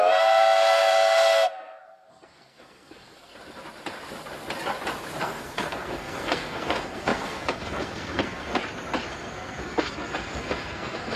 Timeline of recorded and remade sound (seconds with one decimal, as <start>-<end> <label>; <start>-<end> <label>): 0.0-3.3 remade; 3.3-5.2 recorded; 5.2-8.6 remade; 8.6-9.1 recorded; 9.1-11.2 remade